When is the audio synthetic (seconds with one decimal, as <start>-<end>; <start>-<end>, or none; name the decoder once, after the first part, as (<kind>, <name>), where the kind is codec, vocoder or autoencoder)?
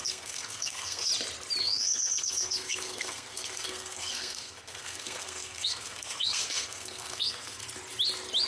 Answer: 0.0-1.1 (codec, SNAC); 1.6-7.6